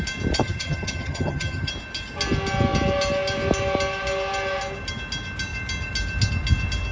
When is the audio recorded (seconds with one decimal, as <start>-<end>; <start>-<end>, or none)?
0.0-0.4; 1.7-6.9